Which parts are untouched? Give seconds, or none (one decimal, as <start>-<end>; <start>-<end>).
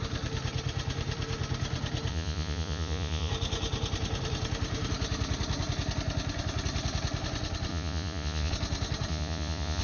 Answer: 0.0-2.1; 3.3-7.7; 8.5-9.1